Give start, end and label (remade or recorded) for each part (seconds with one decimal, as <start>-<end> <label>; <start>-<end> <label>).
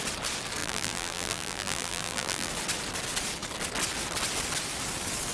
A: 0.0-0.6 recorded; 0.6-2.5 remade; 2.5-5.3 recorded